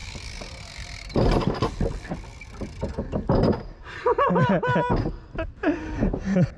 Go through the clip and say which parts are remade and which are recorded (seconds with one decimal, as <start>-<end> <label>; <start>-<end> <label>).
0.0-4.0 remade; 4.0-6.6 recorded